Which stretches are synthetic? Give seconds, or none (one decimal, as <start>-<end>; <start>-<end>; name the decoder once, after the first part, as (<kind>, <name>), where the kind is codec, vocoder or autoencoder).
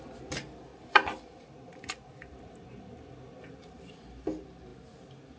0.7-3.9 (vocoder, BigVGAN v2)